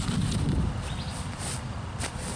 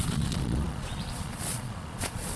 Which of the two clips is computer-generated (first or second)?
second